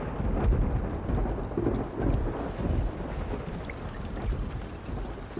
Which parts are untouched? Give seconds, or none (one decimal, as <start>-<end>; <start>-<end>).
0.0-3.5; 4.6-5.4